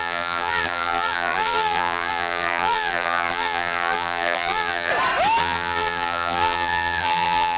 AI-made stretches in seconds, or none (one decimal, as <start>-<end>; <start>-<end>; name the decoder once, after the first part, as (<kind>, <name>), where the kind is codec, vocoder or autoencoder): 0.0-4.9 (vocoder, BigVGAN v2); 5.4-7.6

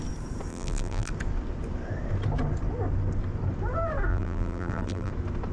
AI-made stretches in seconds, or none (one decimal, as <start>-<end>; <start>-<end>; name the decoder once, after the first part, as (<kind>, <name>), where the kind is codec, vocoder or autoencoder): 0.5-1.1 (vocoder, BigVGAN v2); 4.1-5.1

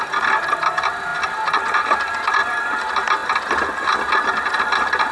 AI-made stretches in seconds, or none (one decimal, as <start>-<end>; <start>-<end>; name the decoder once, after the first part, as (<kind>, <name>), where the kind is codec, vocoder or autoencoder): none